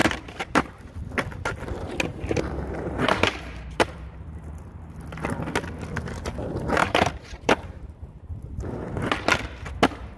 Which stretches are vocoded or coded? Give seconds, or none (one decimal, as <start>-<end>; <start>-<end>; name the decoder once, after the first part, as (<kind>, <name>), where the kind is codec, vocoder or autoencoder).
0.0-0.8 (vocoder, BigVGAN v2); 2.1-4.8; 6.8-8.1